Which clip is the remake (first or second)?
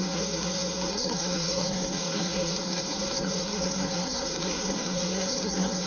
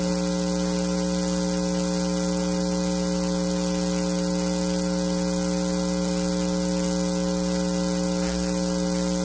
first